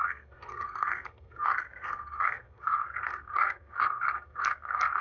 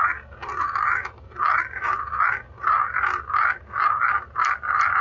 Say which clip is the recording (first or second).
second